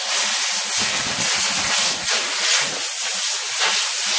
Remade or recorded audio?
recorded